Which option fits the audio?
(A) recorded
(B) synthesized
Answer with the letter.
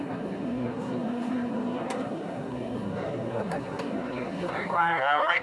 B